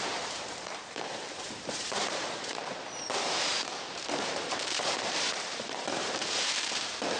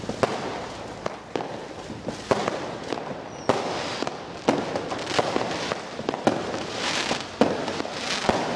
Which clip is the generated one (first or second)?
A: first